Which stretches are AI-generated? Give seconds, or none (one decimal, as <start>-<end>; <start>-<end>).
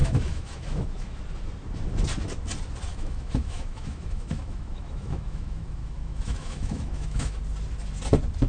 0.0-1.2; 2.9-7.4